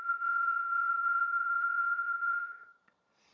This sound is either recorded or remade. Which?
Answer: remade